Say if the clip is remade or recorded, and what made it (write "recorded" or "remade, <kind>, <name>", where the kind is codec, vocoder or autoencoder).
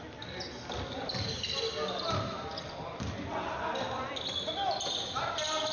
recorded